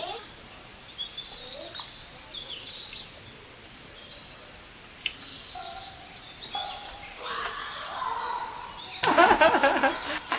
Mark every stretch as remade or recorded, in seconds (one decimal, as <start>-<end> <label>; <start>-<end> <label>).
0.0-10.4 recorded